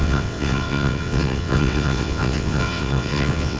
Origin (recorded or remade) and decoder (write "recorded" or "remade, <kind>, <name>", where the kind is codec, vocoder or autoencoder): remade, vocoder, WaveNeXt